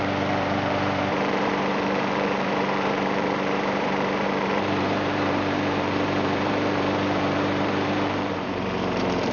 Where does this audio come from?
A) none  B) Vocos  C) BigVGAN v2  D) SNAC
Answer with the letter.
C